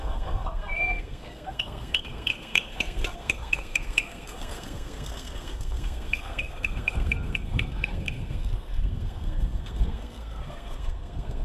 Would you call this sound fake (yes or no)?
yes